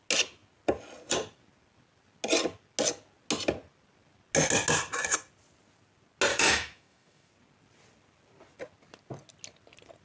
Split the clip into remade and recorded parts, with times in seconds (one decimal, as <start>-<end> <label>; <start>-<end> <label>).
0.0-6.3 recorded; 6.3-7.3 remade; 7.3-10.0 recorded